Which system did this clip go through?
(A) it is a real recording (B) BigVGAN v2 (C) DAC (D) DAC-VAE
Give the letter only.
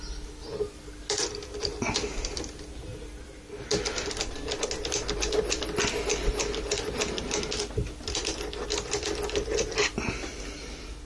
A